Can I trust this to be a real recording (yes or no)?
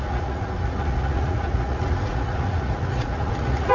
no